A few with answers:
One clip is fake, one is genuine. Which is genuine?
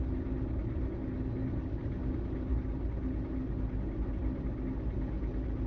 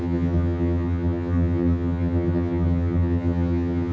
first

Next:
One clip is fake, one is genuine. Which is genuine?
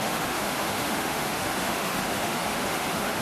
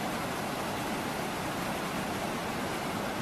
second